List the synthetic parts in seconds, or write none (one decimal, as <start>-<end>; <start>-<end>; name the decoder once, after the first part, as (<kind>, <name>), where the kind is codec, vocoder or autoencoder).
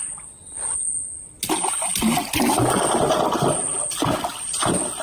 none